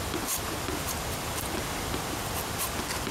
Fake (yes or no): yes